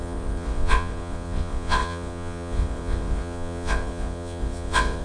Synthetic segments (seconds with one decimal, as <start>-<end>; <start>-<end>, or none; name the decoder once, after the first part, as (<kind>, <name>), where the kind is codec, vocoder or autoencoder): 0.0-5.0 (vocoder, Vocos)